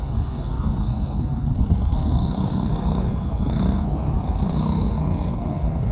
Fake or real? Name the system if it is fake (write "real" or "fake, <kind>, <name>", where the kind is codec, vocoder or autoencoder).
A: fake, codec, SNAC